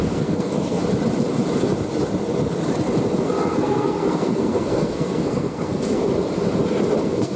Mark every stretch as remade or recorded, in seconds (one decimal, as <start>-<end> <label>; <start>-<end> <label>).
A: 0.0-0.8 remade; 0.8-3.2 recorded; 3.2-6.1 remade; 6.1-7.0 recorded; 7.0-7.4 remade